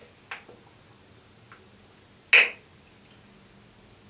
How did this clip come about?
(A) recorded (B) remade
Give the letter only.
A